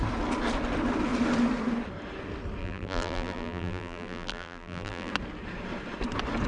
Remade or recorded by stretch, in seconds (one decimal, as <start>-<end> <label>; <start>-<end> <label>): 0.0-2.6 recorded; 2.6-5.1 remade; 5.1-6.5 recorded